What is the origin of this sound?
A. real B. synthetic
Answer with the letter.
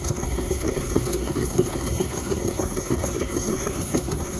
B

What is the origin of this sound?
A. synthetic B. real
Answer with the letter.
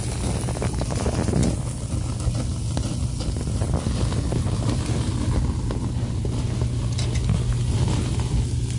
B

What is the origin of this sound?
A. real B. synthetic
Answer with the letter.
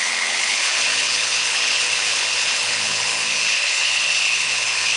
B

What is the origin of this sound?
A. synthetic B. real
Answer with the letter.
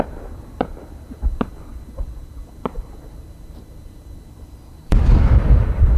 A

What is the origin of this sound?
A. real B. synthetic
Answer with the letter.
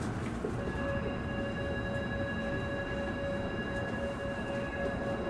A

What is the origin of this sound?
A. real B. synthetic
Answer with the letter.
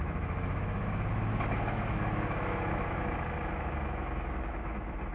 B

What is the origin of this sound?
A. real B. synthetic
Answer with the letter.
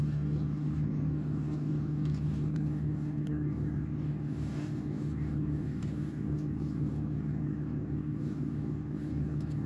B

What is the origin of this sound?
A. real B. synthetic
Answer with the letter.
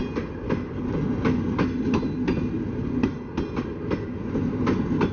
A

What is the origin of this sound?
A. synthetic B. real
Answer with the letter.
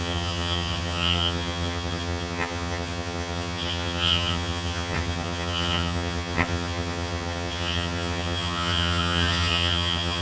A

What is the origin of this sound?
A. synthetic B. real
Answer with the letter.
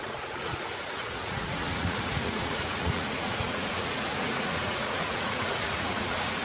A